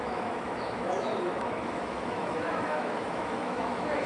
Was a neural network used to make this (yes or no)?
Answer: yes